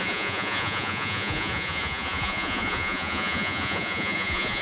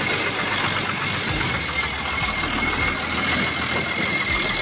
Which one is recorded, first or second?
second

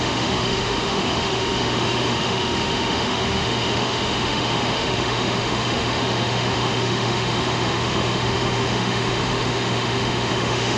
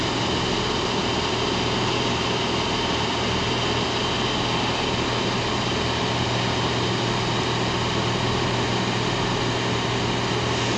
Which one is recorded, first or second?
second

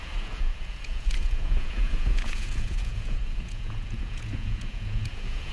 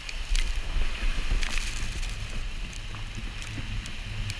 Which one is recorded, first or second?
second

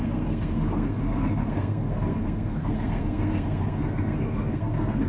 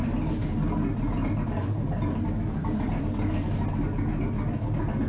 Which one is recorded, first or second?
second